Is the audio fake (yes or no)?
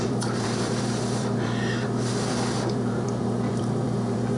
yes